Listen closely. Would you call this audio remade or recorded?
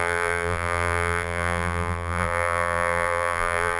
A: remade